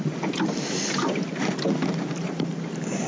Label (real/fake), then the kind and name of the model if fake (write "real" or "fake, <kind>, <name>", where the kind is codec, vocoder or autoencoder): real